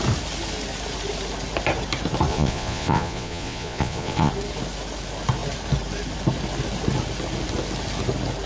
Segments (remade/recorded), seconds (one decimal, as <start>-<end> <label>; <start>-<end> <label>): 0.0-2.3 recorded; 2.3-4.3 remade; 4.3-8.5 recorded